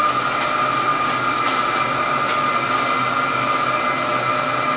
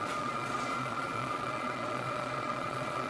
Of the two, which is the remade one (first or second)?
second